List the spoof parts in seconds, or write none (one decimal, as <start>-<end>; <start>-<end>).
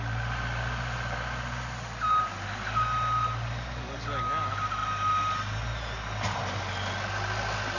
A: none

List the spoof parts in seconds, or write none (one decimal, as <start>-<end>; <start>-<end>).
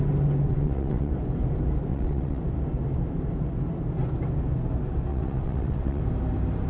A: 0.5-1.1; 1.9-2.4; 5.1-6.0